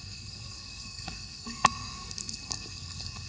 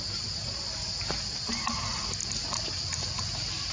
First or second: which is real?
second